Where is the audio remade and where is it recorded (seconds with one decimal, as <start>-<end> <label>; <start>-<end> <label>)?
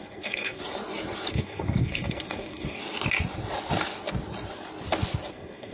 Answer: 0.0-0.6 remade; 0.6-1.3 recorded; 1.3-2.8 remade; 2.8-5.3 recorded; 5.3-5.7 remade